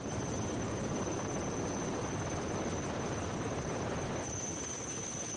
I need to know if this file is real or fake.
real